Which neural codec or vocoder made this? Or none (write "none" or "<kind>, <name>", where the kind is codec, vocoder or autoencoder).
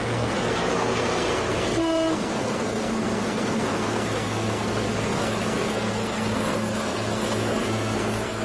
codec, SNAC